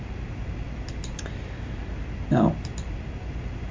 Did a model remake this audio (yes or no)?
no